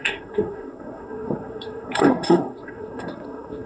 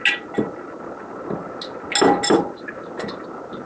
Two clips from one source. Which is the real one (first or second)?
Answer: second